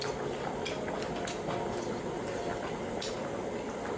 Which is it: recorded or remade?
recorded